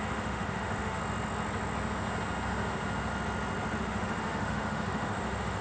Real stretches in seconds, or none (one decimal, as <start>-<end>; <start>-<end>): 1.0-3.8